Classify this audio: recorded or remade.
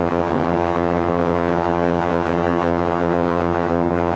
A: remade